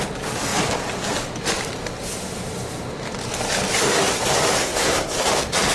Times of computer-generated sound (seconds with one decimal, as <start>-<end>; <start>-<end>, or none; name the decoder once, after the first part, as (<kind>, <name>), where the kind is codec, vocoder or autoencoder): 4.6-5.3 (codec, SNAC)